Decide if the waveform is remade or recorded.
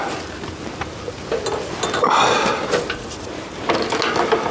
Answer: recorded